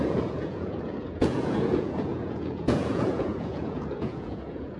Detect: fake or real fake